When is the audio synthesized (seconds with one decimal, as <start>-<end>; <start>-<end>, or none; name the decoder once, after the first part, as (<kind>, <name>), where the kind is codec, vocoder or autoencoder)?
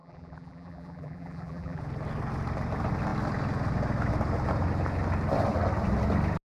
0.0-1.8 (vocoder, BigVGAN v2)